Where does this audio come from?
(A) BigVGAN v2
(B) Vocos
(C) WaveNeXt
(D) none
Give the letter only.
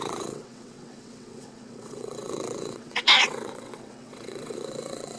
C